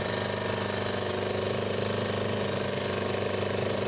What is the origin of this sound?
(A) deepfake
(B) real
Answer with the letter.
B